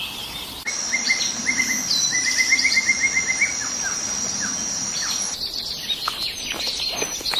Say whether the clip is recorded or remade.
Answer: recorded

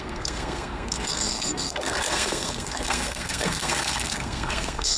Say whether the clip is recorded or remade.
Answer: remade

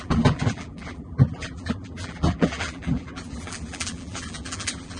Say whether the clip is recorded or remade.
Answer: remade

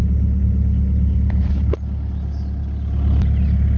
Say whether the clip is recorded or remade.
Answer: recorded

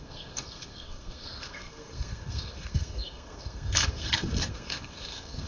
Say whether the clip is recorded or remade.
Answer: remade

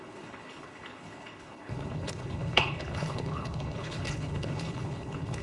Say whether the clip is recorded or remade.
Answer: remade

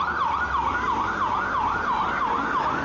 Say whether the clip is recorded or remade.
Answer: recorded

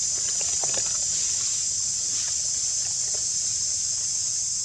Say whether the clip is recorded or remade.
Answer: recorded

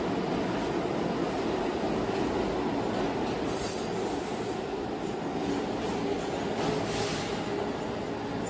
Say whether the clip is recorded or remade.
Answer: recorded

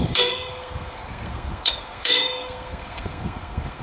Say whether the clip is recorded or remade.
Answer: remade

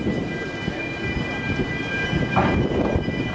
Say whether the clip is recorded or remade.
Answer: recorded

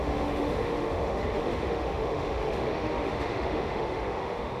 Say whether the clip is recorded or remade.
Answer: remade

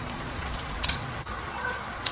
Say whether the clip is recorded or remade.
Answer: remade